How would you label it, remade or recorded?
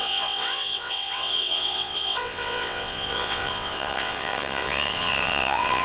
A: remade